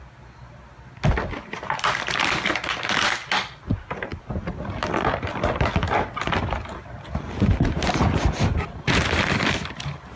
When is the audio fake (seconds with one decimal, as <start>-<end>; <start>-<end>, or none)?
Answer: none